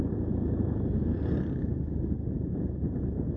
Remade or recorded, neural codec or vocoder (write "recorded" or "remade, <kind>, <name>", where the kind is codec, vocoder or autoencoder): recorded